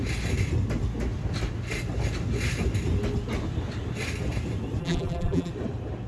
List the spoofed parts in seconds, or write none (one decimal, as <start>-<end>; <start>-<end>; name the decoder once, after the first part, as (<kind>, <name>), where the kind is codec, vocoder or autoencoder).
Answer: 4.8-5.5 (vocoder, BigVGAN v2)